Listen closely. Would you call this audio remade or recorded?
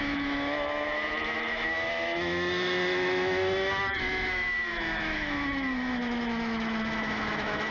remade